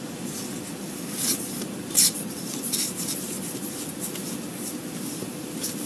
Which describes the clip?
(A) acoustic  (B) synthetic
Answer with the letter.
A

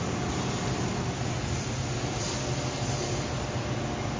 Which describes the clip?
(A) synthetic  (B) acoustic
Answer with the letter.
B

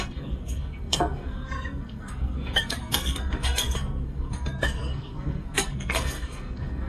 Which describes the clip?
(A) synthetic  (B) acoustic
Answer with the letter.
A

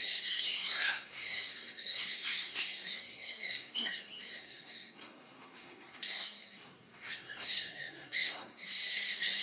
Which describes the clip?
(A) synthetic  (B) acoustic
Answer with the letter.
A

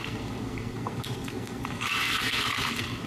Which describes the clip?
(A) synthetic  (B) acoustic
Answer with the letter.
A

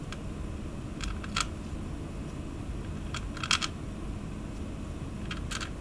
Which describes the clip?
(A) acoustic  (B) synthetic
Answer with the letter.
A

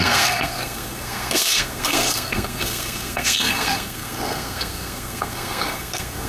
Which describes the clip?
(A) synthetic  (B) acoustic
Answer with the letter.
A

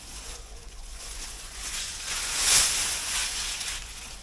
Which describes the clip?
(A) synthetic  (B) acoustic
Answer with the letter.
A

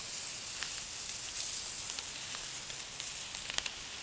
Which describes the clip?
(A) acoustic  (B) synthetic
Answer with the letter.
A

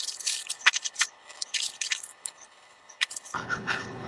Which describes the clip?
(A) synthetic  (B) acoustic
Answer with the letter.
A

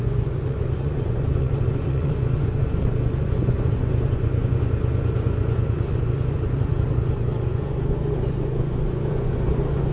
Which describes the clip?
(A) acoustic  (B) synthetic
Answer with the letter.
B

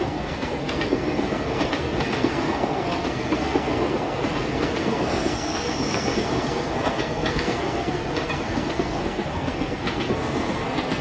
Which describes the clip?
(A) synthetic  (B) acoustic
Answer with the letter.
A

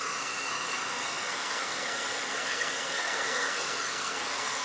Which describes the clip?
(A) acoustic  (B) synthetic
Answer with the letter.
B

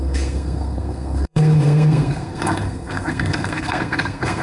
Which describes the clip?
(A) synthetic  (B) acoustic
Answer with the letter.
A